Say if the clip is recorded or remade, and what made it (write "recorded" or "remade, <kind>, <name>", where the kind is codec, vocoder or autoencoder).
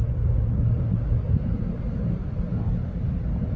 recorded